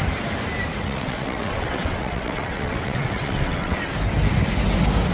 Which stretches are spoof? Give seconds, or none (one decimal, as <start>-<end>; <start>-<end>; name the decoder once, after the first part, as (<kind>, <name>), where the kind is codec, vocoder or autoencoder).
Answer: 0.8-3.8 (vocoder, WaveNeXt)

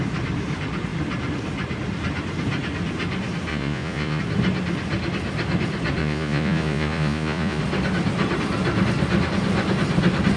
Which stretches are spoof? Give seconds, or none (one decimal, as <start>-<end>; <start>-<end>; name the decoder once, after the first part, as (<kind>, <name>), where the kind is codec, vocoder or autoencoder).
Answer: 3.5-4.2 (vocoder, Vocos); 6.0-7.6

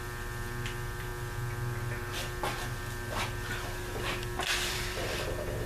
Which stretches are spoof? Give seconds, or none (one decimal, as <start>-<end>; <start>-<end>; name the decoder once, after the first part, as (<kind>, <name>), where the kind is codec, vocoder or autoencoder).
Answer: 0.0-1.1 (vocoder, BigVGAN v2); 4.4-5.7